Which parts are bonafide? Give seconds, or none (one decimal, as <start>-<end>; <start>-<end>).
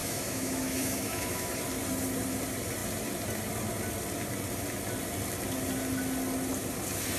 1.5-7.2